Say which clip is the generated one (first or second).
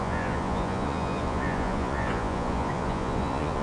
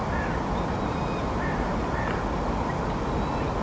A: first